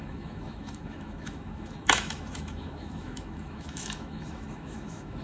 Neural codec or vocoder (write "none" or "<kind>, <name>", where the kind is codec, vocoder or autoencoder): autoencoder, DAC-VAE